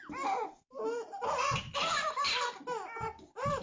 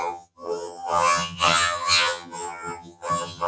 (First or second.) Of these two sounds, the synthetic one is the second